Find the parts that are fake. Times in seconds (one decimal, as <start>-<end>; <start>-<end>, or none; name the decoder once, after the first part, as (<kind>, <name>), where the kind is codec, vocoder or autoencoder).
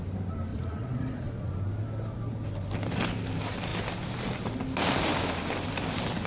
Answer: 0.5-1.5 (vocoder, Vocos)